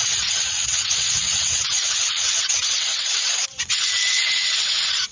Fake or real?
fake